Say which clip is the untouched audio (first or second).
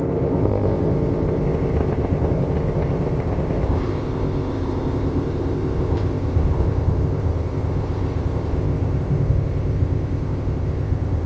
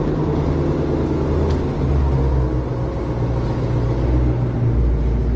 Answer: second